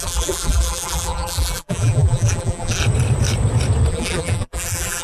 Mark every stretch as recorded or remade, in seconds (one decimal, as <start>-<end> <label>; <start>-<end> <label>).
0.0-2.8 remade; 2.8-3.9 recorded; 3.9-5.0 remade